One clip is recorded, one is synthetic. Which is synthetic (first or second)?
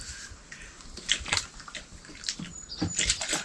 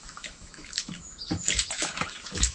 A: second